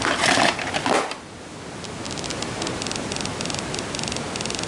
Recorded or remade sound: recorded